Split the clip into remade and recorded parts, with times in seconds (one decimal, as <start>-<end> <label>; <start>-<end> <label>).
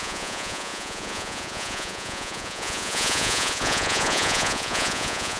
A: 0.0-5.4 remade